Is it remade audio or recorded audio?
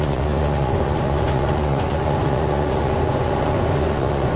remade